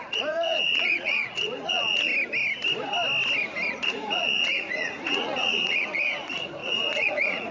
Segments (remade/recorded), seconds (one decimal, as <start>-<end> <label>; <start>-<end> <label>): 0.0-2.1 remade; 2.1-3.7 recorded; 3.7-7.5 remade